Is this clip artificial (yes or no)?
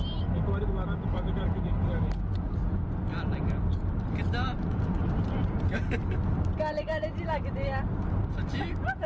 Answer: no